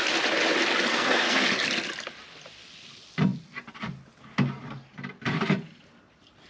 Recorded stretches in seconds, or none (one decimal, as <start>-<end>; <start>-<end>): 0.0-0.9; 1.5-6.5